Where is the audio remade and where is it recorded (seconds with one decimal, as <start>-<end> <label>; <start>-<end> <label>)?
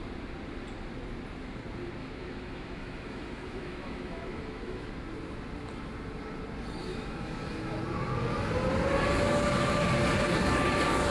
0.0-2.0 recorded; 2.0-4.9 remade; 4.9-6.8 recorded; 6.8-7.8 remade; 7.8-11.1 recorded